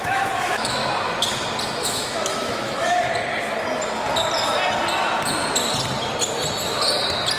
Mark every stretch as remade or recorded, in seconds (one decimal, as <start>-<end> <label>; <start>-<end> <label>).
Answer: 0.0-0.8 remade; 0.8-1.8 recorded; 1.8-3.1 remade; 3.1-7.4 recorded